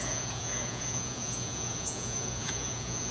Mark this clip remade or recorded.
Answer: remade